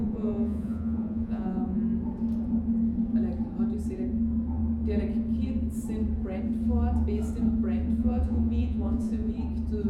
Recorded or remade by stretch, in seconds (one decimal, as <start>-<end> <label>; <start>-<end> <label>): 0.0-1.8 remade; 1.8-8.0 recorded; 8.0-9.3 remade; 9.3-9.9 recorded